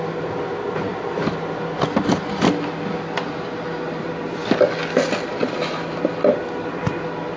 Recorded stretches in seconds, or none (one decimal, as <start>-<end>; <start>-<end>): 0.0-7.4